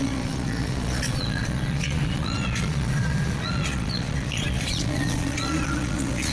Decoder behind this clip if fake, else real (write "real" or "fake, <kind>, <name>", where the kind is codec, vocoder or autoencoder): fake, vocoder, Vocos